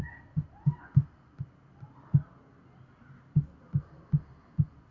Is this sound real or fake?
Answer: real